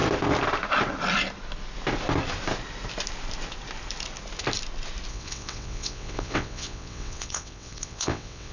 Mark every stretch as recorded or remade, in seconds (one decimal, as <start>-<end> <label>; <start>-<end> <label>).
0.0-5.1 recorded; 5.1-8.5 remade